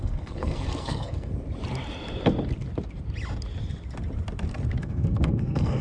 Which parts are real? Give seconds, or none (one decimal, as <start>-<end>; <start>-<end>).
1.3-4.8